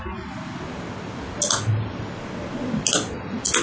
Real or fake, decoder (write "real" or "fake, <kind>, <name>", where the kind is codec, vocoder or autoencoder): real